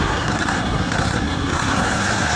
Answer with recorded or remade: remade